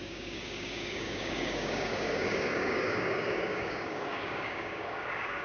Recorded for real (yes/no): no